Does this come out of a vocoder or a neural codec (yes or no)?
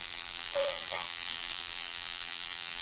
yes